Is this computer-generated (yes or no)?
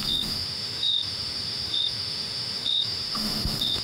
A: yes